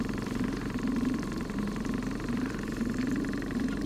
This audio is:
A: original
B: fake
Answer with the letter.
B